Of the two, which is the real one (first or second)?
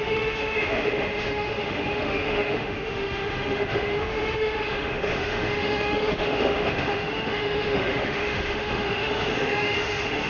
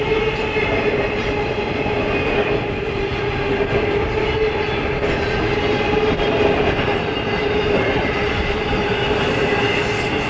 second